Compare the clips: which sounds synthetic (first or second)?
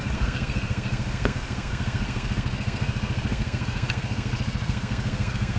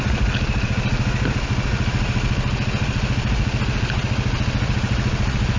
first